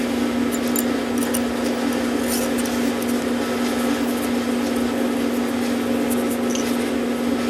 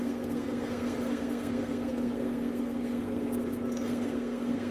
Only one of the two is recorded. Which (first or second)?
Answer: first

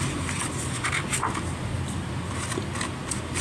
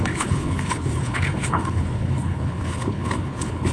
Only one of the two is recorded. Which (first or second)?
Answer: first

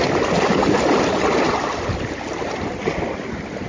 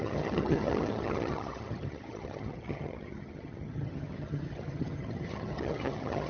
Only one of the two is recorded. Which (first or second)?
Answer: first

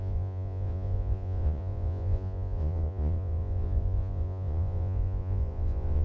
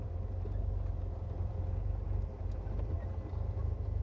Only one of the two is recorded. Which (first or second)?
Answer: second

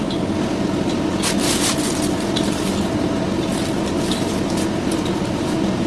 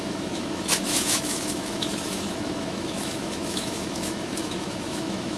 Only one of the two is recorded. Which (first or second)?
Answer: first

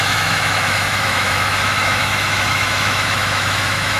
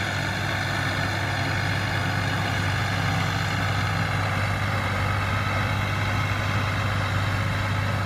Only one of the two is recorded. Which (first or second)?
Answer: second